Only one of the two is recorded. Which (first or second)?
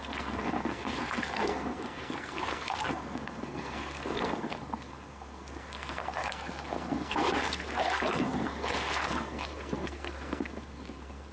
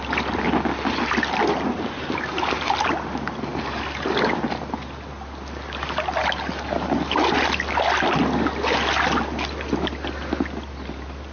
second